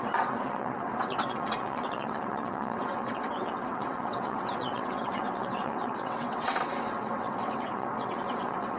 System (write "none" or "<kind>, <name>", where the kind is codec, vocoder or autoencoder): vocoder, WaveNeXt